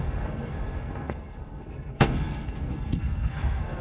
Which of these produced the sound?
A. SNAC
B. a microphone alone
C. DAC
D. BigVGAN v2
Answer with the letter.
A